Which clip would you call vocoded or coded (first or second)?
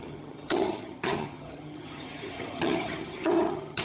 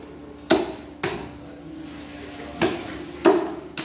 first